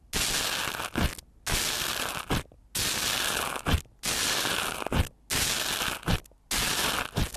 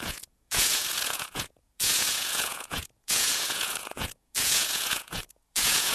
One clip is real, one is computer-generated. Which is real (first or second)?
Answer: first